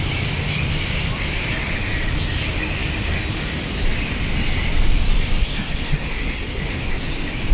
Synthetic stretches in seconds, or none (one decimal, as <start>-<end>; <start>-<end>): 5.4-7.0